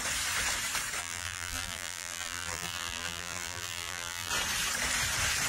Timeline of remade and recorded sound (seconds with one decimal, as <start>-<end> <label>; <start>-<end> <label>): 0.0-1.0 recorded; 1.0-4.3 remade; 4.3-5.5 recorded